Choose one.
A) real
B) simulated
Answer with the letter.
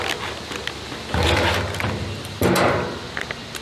A